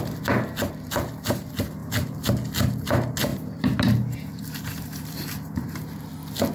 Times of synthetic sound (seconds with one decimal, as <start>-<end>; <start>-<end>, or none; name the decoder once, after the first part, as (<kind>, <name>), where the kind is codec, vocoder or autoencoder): 1.8-2.3 (vocoder, BigVGAN v2); 3.3-6.1